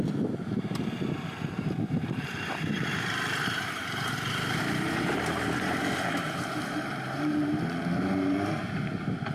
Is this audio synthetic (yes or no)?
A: yes